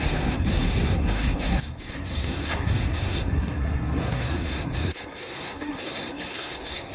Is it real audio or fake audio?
fake